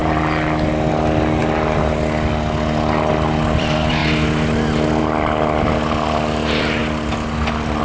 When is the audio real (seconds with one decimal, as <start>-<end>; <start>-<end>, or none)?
0.0-0.9; 1.4-3.1; 4.0-5.0; 6.8-7.8